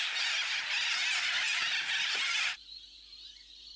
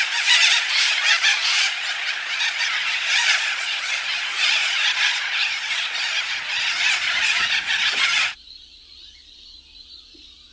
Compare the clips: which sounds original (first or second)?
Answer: first